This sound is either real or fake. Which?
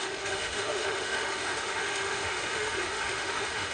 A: fake